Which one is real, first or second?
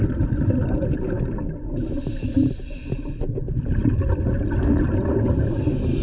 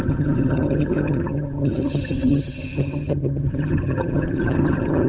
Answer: first